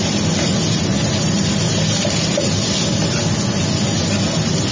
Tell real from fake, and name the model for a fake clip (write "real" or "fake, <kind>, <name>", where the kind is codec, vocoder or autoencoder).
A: real